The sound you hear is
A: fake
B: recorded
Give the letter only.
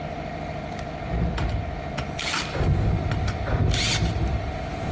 A